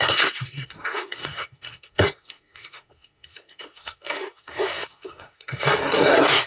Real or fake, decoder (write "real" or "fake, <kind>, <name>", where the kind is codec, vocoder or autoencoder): fake, codec, SNAC